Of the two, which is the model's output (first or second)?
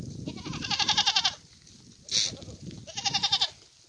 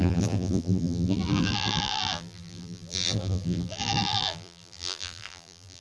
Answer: second